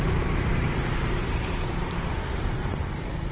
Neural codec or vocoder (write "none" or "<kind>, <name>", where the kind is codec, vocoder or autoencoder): vocoder, BigVGAN v2